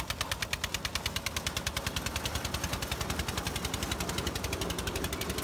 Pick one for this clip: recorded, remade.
recorded